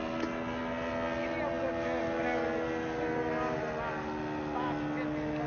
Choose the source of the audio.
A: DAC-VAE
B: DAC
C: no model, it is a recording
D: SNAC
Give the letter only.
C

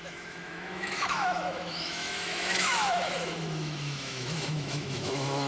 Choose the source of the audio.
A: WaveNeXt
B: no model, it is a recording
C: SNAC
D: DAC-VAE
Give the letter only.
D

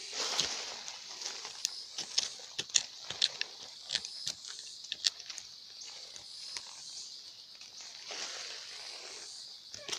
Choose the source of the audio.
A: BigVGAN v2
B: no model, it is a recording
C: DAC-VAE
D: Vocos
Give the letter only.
B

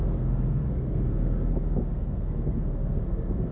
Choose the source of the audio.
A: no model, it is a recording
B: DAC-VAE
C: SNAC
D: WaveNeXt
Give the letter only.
C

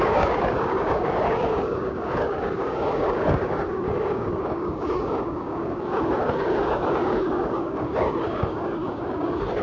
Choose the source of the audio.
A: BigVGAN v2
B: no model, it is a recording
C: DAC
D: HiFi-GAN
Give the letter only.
C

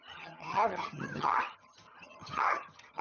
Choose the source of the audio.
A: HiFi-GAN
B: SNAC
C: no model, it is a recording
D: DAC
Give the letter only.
A